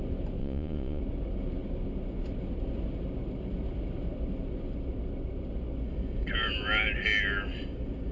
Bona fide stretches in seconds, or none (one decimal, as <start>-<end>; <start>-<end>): 0.0-0.4; 1.0-8.1